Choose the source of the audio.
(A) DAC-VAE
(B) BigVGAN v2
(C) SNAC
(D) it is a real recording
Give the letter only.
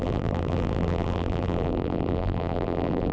B